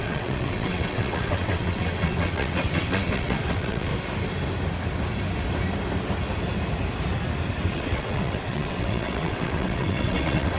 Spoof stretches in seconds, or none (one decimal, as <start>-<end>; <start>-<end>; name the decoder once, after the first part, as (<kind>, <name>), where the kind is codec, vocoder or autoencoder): 0.0-3.9 (vocoder, WaveNeXt); 7.6-10.6